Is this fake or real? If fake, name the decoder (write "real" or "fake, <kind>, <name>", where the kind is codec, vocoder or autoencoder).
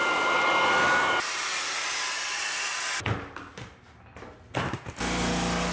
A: real